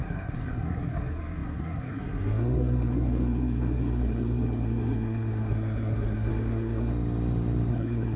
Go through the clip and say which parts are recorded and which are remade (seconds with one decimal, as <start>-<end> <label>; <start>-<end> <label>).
0.0-6.9 remade; 6.9-7.7 recorded; 7.7-8.2 remade